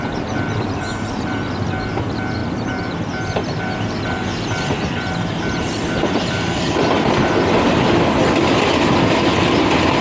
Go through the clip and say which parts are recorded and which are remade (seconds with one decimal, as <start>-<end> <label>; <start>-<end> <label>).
0.0-10.0 recorded